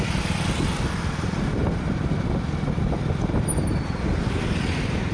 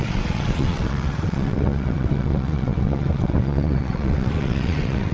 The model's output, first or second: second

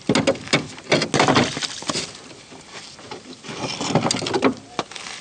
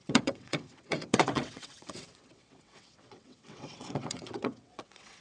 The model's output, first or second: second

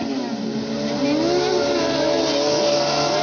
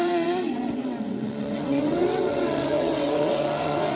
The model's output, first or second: second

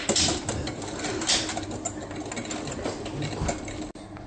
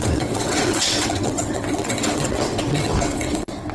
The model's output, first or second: second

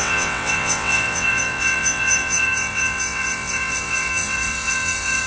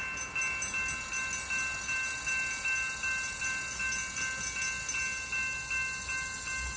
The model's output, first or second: first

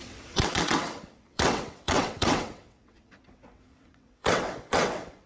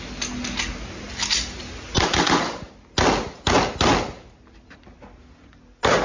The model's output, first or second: first